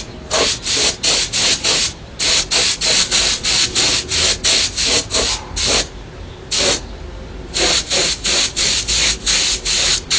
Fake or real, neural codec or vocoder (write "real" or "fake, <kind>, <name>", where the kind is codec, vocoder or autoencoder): real